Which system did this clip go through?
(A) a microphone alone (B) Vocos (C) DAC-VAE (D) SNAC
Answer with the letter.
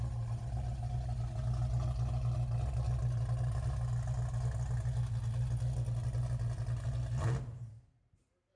A